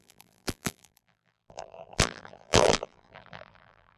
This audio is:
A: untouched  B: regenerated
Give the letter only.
B